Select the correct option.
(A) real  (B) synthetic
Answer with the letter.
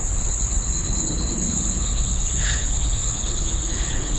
B